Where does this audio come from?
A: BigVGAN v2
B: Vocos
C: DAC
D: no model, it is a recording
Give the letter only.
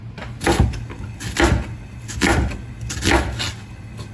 D